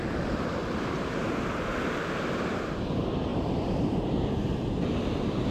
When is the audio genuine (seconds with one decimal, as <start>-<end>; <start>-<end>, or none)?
0.0-0.6; 1.2-3.3